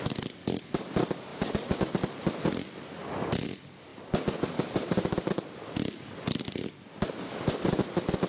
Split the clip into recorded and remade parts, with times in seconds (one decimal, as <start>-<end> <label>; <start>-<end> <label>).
0.0-1.3 recorded; 1.3-3.0 remade; 3.0-3.9 recorded; 3.9-6.8 remade; 6.8-7.3 recorded; 7.3-8.3 remade